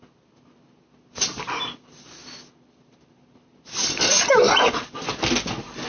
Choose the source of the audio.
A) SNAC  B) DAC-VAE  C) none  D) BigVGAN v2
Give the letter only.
C